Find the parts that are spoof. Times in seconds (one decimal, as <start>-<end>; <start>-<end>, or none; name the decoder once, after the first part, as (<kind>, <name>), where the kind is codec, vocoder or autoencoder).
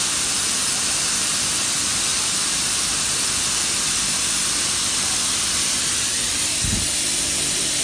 0.0-7.8 (vocoder, BigVGAN v2)